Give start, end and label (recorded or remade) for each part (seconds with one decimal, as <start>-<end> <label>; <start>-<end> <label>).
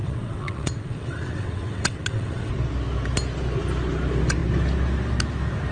0.0-2.5 remade; 2.5-5.7 recorded